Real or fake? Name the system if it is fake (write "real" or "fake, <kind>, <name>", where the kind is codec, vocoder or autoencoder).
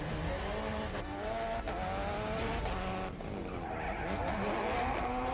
real